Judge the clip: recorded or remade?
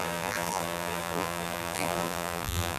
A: remade